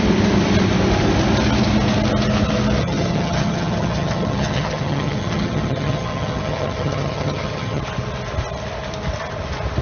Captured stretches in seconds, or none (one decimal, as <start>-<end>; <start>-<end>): 0.0-2.8; 7.8-9.8